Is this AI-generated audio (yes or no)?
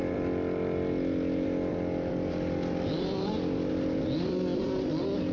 no